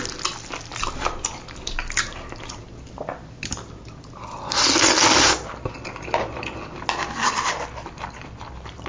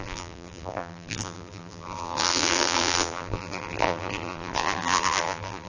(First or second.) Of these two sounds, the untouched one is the first